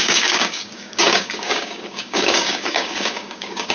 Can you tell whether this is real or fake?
fake